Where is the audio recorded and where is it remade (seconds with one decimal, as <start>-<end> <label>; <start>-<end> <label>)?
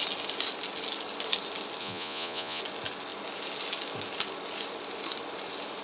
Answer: 0.0-1.8 recorded; 1.8-2.6 remade; 2.6-5.8 recorded